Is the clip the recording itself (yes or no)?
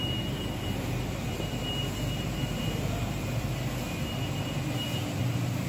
no